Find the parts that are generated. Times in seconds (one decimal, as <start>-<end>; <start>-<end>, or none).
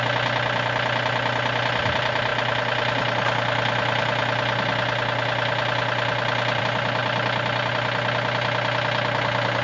none